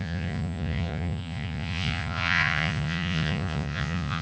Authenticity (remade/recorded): remade